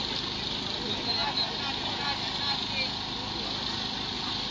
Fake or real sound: real